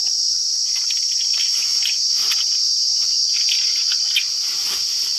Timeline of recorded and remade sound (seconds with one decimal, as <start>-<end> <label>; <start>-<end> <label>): 0.0-1.0 recorded; 1.0-1.5 remade; 1.5-5.2 recorded